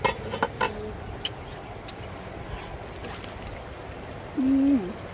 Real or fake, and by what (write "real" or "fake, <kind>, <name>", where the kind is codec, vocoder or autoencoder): real